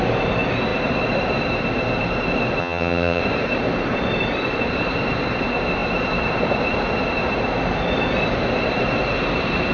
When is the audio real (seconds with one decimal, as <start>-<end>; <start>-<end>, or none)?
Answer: 0.0-2.6; 3.2-9.7